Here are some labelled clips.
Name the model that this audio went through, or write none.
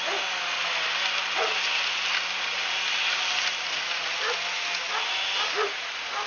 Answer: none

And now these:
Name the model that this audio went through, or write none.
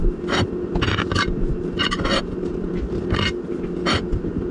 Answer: none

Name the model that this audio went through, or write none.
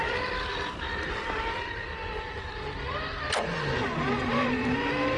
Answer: none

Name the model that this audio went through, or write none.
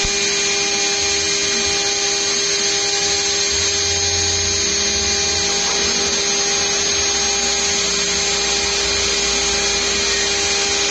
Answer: none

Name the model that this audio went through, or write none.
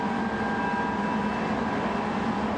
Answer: none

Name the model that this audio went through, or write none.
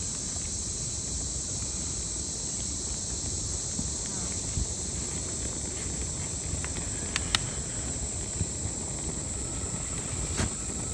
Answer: none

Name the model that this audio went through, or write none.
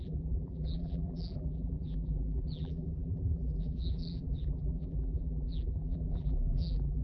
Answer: vocoder, BigVGAN v2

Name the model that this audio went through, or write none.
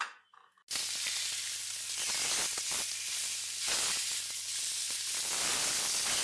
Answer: none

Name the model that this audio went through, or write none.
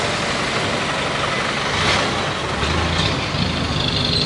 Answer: none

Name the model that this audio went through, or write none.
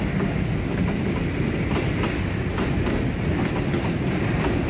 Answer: none